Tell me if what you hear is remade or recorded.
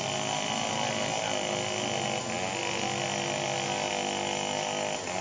recorded